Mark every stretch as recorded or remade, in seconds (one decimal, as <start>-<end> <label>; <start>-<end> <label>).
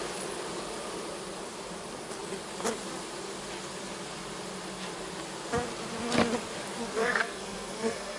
0.0-7.0 recorded; 7.0-8.2 remade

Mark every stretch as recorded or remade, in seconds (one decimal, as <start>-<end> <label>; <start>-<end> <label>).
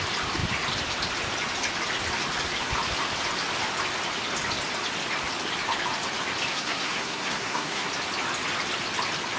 0.0-6.5 recorded; 6.5-7.9 remade; 7.9-9.4 recorded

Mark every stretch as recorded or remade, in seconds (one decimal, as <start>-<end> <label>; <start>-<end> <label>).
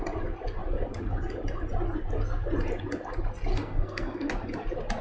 0.0-3.5 recorded; 3.5-4.3 remade; 4.3-5.0 recorded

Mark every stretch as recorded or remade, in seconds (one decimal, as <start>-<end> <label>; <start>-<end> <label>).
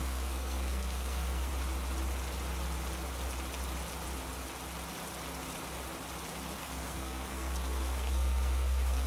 0.0-1.5 remade; 1.5-6.6 recorded; 6.6-9.1 remade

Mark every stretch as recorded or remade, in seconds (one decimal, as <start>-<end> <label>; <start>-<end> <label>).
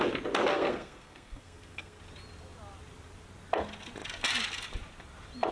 0.0-0.5 recorded; 0.5-2.0 remade; 2.0-5.5 recorded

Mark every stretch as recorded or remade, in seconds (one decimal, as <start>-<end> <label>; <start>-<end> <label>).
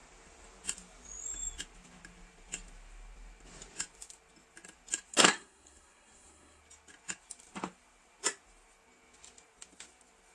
0.0-5.1 recorded; 5.1-6.6 remade; 6.6-10.3 recorded